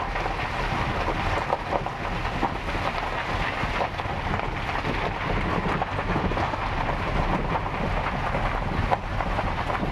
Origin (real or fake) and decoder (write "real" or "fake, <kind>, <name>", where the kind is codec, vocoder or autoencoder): real